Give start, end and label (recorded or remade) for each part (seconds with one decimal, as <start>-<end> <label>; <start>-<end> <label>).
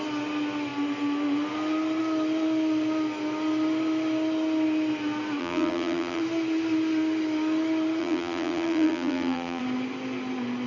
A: 0.0-5.4 recorded; 5.4-6.2 remade; 6.2-8.0 recorded; 8.0-9.6 remade; 9.6-10.7 recorded